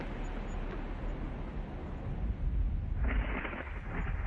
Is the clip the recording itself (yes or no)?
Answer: yes